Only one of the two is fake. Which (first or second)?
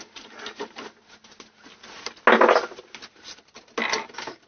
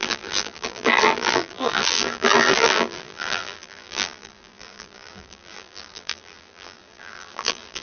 second